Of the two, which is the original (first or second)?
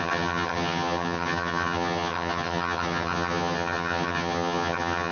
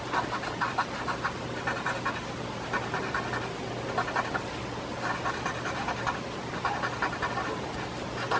second